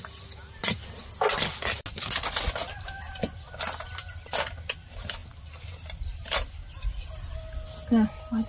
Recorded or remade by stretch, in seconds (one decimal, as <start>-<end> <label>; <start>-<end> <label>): 0.0-5.2 recorded; 5.2-6.8 remade; 6.8-8.5 recorded